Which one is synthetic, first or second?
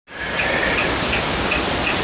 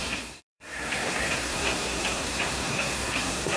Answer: second